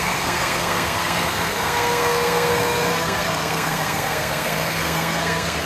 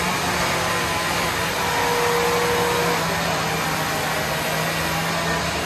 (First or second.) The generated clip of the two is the first